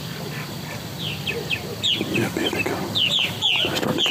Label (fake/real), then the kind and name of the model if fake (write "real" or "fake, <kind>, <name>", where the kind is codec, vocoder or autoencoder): fake, vocoder, BigVGAN v2